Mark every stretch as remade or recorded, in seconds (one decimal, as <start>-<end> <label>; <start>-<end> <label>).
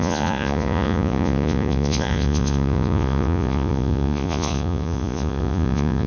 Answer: 0.0-6.1 remade